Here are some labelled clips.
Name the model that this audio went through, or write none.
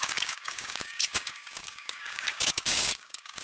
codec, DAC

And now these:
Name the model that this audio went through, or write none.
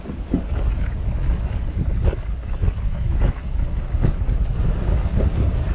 codec, DAC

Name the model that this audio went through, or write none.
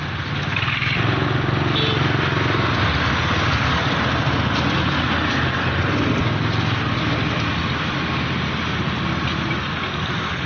none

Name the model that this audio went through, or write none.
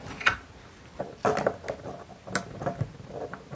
none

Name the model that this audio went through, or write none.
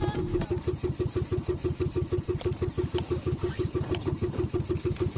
none